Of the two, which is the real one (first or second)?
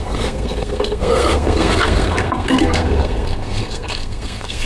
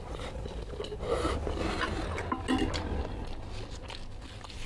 second